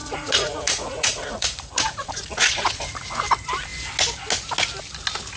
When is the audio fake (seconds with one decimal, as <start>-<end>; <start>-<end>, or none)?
0.0-3.2